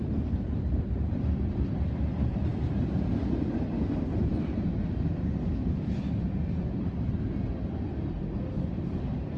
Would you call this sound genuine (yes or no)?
yes